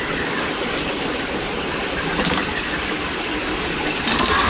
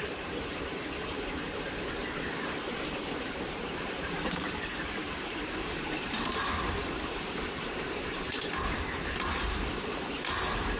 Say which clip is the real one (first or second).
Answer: first